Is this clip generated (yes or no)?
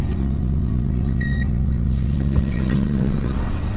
yes